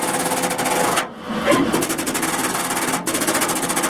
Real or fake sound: real